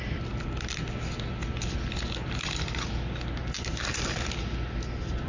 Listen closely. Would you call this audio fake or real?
real